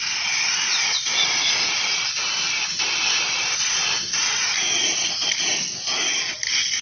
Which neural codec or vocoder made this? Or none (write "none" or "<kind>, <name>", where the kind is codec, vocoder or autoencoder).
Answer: none